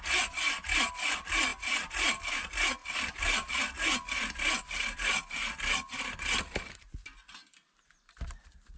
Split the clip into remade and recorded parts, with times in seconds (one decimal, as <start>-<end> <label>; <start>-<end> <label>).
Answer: 0.0-8.8 recorded